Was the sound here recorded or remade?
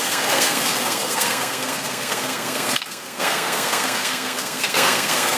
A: remade